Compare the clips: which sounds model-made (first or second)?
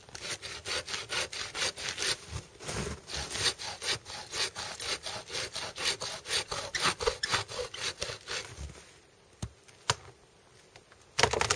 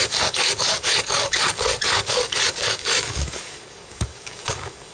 second